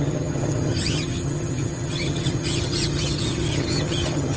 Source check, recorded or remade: remade